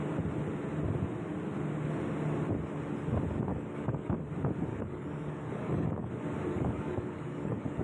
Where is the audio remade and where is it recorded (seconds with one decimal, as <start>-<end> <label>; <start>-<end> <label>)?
0.0-3.5 recorded; 3.5-4.1 remade; 4.1-4.7 recorded; 4.7-6.1 remade; 6.1-6.5 recorded; 6.5-7.8 remade